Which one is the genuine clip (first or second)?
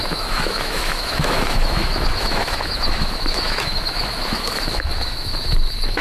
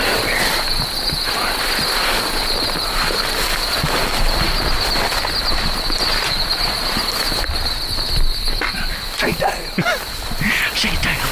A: second